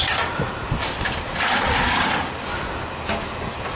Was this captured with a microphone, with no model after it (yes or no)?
yes